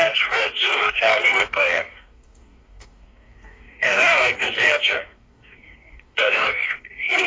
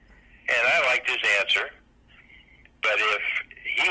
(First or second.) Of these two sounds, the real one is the second